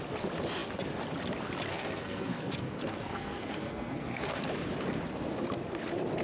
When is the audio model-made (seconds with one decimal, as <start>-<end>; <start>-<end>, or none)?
1.7-4.5